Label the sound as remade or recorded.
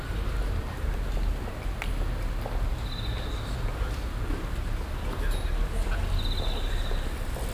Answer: recorded